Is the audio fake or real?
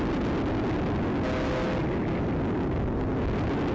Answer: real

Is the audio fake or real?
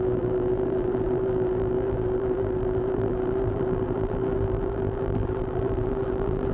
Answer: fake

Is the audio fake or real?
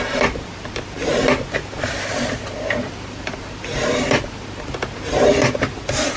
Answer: fake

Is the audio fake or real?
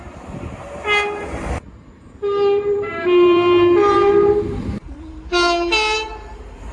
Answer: fake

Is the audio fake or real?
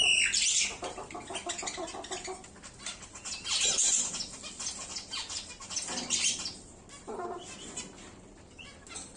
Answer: real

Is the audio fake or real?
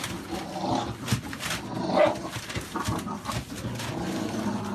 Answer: real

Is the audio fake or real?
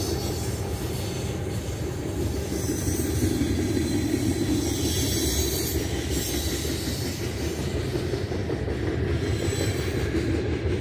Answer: real